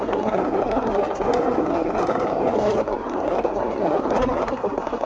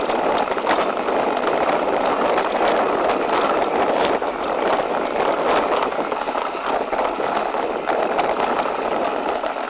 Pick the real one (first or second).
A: second